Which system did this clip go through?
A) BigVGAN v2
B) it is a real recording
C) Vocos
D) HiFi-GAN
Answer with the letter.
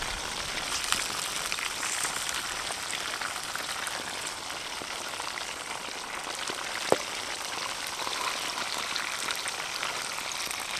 B